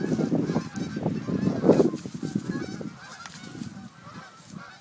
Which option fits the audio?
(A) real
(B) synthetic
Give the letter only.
A